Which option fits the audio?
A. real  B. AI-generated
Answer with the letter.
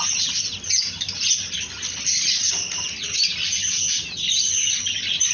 A